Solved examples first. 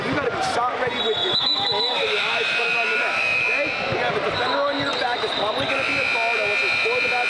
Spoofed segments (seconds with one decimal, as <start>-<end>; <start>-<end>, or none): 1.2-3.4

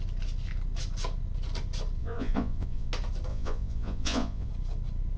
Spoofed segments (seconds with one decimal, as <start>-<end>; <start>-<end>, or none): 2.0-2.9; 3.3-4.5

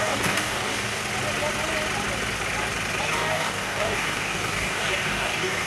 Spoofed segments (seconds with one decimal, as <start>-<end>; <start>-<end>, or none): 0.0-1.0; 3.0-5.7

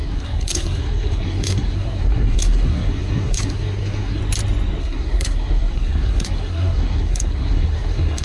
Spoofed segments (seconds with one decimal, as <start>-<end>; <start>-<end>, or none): 0.0-4.2; 4.8-8.2

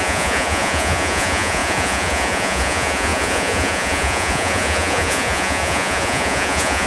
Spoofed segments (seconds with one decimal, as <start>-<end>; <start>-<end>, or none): 0.0-6.9

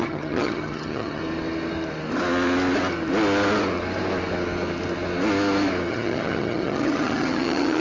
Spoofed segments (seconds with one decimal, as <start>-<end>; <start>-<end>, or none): 0.0-1.2; 5.9-7.8

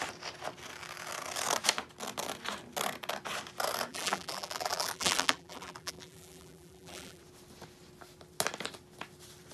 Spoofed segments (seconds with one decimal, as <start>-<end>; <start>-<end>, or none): 3.9-7.2

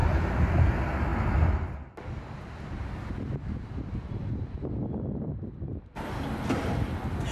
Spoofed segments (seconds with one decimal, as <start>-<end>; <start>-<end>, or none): none